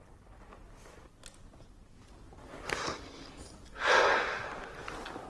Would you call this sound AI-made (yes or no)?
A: no